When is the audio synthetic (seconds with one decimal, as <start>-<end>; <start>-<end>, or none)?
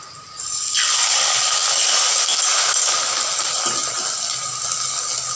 none